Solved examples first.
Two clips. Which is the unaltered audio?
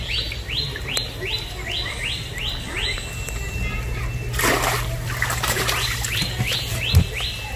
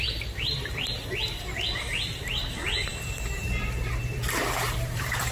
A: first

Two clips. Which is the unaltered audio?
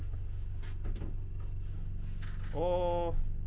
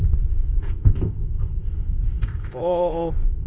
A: first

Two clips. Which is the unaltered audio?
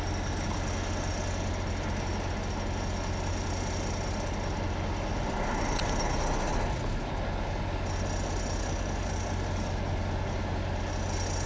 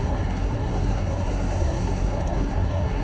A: first